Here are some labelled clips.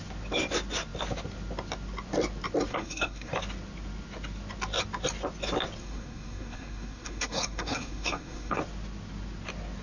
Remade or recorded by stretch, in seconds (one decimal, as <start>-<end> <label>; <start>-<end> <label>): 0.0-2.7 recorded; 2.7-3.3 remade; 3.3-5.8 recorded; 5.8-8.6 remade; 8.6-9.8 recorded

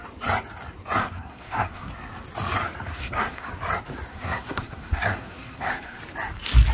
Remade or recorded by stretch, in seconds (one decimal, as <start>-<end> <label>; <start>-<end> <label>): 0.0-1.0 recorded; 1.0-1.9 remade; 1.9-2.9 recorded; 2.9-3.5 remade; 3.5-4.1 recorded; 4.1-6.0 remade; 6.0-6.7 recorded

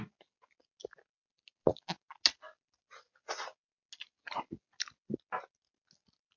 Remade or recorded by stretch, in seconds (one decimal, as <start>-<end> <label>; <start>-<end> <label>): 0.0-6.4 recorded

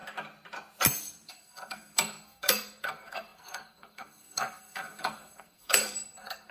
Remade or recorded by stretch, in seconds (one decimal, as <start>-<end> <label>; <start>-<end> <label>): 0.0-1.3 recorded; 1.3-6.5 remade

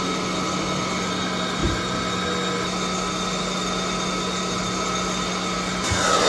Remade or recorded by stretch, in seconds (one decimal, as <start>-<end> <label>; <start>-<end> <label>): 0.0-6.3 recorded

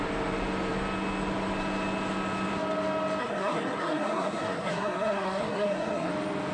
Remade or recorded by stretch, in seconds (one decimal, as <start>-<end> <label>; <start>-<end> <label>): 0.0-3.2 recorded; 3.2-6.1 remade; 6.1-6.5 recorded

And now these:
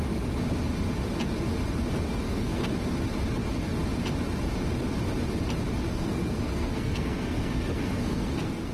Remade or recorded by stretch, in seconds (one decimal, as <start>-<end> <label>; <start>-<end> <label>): 0.0-2.1 recorded; 2.1-2.7 remade; 2.7-5.9 recorded; 5.9-8.7 remade